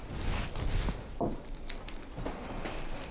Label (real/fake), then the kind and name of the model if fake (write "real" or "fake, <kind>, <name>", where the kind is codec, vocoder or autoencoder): real